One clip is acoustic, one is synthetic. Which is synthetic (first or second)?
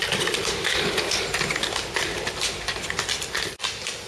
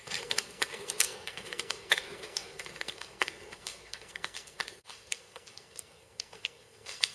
second